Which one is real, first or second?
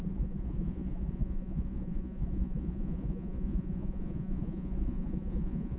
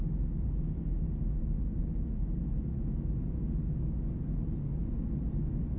second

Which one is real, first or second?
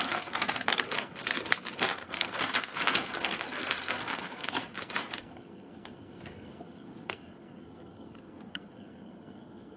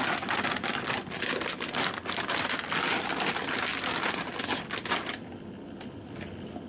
second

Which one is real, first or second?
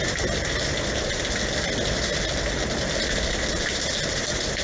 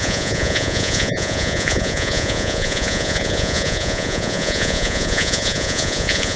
first